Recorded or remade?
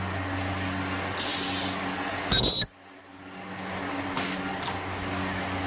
recorded